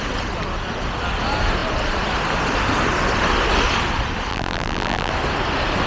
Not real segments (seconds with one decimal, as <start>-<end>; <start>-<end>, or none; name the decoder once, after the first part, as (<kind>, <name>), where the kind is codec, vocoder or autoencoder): 4.3-5.1 (vocoder, BigVGAN v2)